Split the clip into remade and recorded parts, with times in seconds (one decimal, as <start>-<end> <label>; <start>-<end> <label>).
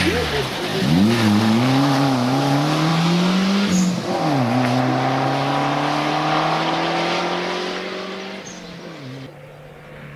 0.0-10.2 recorded